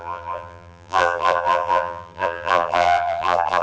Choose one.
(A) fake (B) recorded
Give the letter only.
A